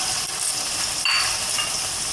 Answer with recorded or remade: recorded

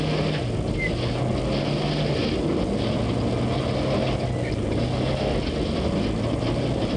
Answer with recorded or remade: recorded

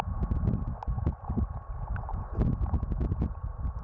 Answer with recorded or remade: recorded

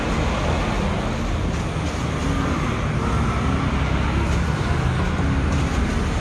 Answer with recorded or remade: recorded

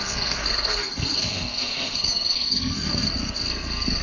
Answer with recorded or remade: remade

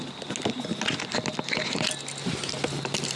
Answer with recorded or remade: recorded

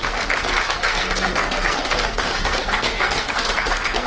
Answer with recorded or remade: remade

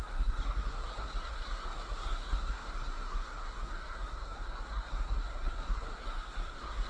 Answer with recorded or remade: remade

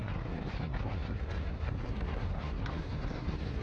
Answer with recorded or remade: remade